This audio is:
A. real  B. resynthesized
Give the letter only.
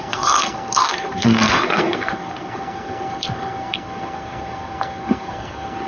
B